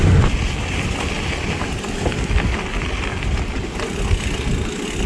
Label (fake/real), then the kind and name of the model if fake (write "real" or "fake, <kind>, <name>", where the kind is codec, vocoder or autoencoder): real